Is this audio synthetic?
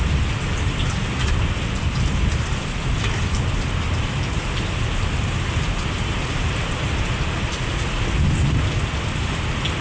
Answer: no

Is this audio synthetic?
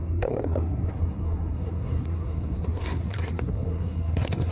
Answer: yes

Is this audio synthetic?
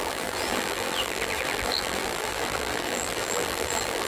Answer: yes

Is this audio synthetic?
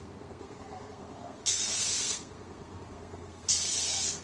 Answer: yes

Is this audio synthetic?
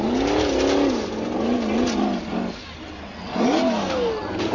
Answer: no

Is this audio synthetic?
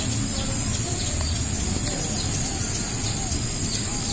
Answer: no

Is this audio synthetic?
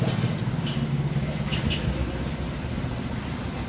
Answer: no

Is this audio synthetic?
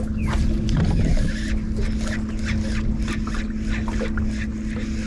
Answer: no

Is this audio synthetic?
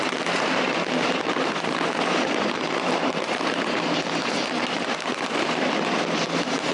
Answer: yes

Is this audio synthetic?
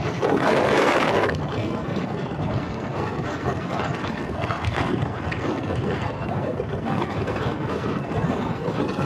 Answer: yes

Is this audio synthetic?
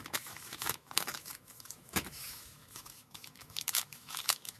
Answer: yes